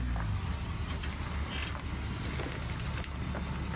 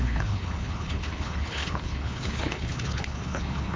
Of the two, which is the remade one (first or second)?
second